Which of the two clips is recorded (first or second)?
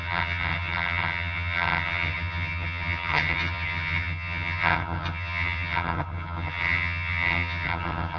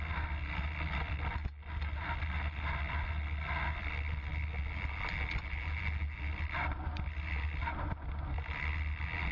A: second